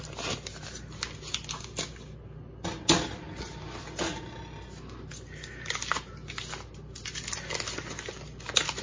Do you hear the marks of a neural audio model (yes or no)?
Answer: no